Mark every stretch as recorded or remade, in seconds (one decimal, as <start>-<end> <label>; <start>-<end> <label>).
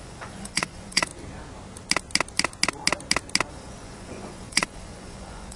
0.0-1.1 remade; 1.1-3.5 recorded; 3.5-5.6 remade